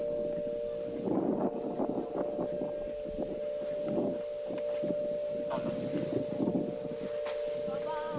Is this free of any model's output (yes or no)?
yes